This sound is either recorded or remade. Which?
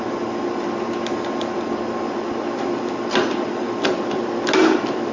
recorded